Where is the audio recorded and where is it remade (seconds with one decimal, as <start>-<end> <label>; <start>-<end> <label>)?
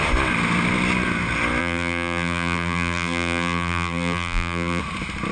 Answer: 0.0-1.6 recorded; 1.6-4.8 remade; 4.8-5.3 recorded